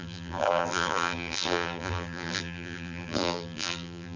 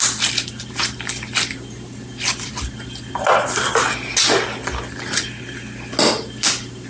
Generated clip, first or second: first